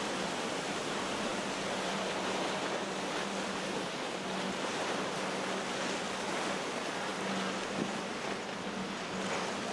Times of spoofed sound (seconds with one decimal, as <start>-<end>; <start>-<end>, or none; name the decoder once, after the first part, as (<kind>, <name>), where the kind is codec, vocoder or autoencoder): none